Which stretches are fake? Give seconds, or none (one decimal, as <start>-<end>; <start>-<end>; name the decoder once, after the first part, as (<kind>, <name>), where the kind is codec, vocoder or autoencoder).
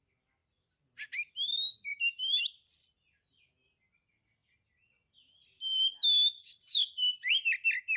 1.9-3.5 (vocoder, BigVGAN v2)